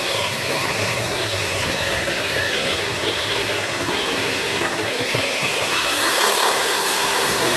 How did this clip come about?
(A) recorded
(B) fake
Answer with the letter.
B